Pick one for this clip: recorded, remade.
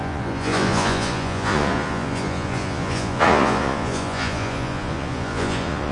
remade